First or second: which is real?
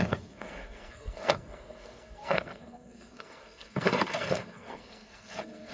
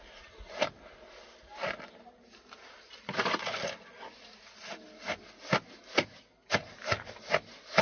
second